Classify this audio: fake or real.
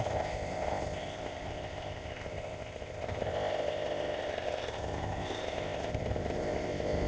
fake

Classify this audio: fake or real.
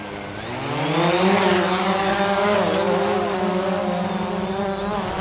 real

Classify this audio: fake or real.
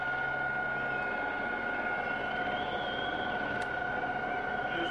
real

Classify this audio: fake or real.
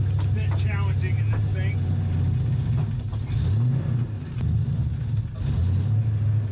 real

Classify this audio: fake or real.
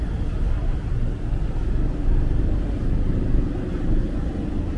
real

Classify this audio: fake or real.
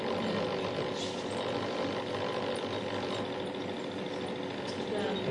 real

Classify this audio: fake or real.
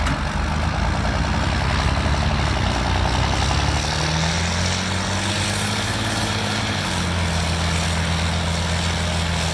real